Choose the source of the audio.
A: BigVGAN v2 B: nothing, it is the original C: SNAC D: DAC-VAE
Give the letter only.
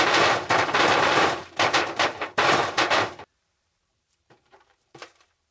A